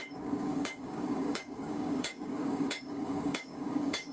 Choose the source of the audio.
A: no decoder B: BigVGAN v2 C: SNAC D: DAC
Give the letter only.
D